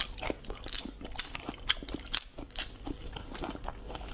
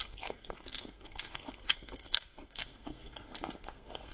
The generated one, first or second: second